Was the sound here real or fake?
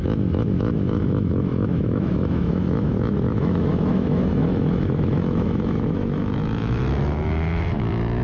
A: fake